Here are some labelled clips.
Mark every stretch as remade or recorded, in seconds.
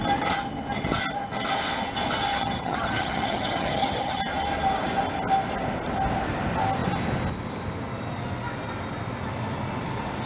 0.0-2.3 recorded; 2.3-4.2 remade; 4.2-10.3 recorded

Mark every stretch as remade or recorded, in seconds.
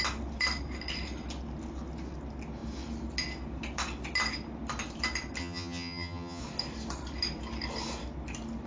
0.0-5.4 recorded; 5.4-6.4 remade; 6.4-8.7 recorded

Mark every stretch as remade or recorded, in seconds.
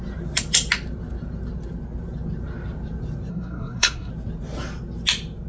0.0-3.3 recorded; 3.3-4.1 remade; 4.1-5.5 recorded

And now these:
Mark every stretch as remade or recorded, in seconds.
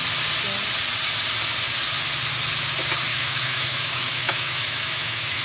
0.0-3.1 recorded; 3.1-5.4 remade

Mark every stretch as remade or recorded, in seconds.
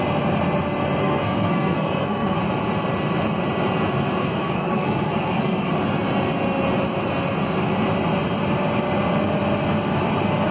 0.0-1.0 recorded; 1.0-2.4 remade; 2.4-4.2 recorded; 4.2-5.7 remade; 5.7-10.5 recorded